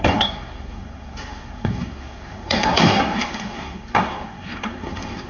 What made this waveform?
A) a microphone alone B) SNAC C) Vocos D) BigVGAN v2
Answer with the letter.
B